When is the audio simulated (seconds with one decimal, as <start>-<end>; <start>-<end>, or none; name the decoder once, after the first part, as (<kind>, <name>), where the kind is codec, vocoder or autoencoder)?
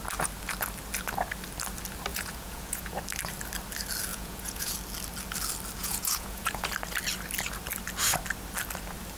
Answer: 2.1-3.0 (vocoder, Vocos); 4.1-4.7; 5.8-6.7